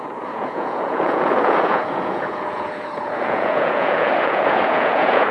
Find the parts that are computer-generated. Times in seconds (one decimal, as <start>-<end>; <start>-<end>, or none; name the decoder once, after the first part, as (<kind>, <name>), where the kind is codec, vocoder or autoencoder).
0.0-5.3 (vocoder, Vocos)